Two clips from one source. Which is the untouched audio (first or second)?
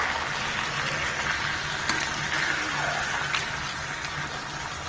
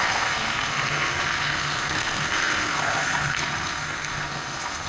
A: first